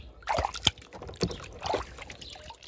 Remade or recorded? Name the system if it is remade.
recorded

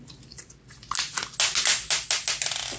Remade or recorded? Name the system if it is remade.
recorded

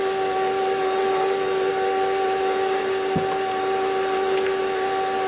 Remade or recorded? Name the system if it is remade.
recorded